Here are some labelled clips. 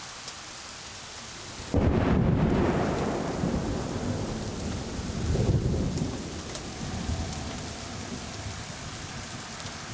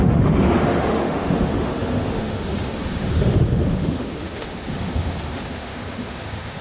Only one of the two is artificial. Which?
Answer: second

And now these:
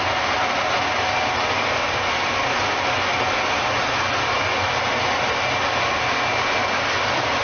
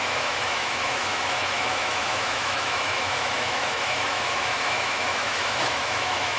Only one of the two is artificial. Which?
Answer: second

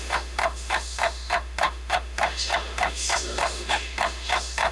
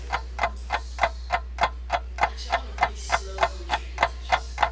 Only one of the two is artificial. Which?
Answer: first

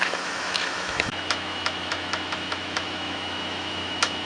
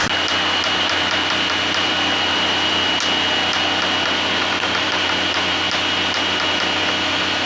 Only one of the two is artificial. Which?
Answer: first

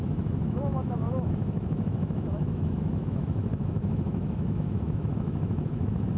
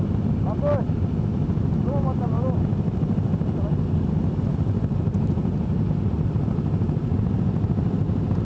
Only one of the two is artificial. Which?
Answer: first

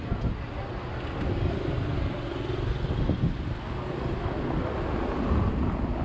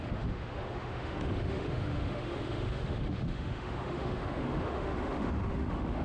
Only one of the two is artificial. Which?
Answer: second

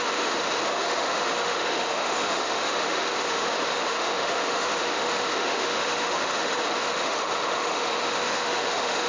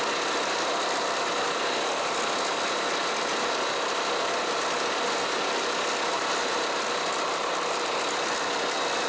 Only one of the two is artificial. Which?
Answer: first